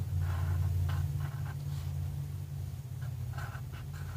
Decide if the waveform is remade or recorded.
remade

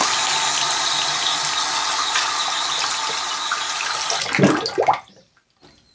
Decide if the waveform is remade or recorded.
recorded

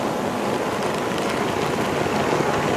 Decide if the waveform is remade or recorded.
recorded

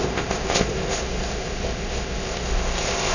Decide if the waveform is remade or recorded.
remade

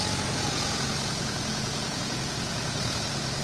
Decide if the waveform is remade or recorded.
remade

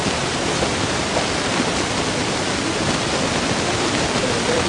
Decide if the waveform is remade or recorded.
recorded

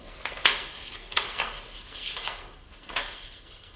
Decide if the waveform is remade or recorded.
remade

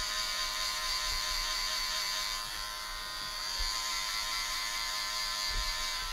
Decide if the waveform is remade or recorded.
remade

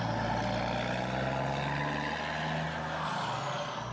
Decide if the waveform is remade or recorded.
recorded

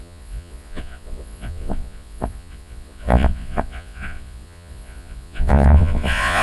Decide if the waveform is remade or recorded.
remade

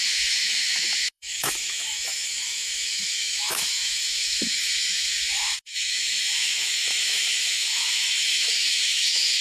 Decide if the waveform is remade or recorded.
remade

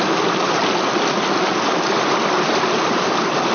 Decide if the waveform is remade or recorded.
recorded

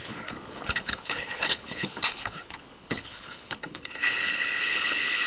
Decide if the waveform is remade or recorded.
remade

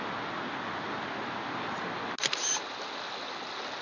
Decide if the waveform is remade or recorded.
recorded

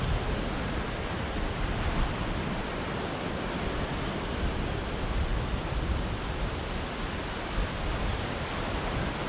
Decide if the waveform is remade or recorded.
recorded